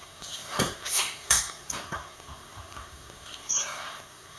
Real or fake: fake